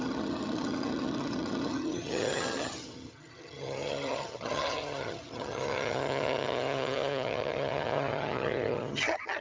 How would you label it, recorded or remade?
remade